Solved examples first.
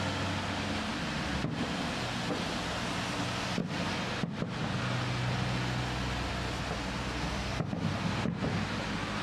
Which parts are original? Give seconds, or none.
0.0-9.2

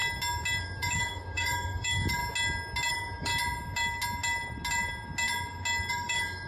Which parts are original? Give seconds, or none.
0.0-0.6; 2.2-2.9; 3.3-5.9

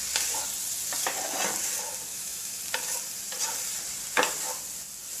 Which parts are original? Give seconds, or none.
0.0-2.1; 2.6-5.2

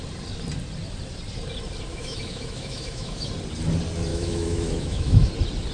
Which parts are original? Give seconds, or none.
0.0-1.9; 3.3-4.1; 5.3-5.7